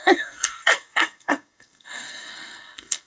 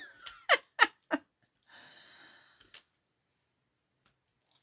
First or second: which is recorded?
second